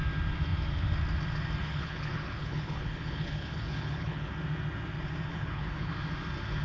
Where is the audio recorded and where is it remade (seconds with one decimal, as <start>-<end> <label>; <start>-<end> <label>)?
0.0-1.6 recorded; 1.6-4.3 remade; 4.3-5.3 recorded; 5.3-5.9 remade; 5.9-6.6 recorded